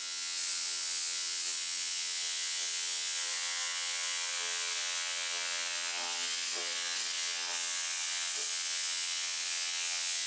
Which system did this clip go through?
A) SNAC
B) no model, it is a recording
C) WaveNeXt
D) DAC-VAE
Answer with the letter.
C